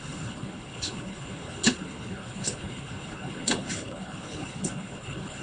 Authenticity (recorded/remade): remade